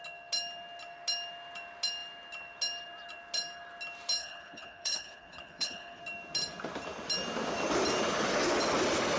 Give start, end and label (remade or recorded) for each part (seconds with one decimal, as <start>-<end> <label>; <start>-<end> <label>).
0.0-4.2 recorded; 4.2-6.0 remade; 6.0-9.2 recorded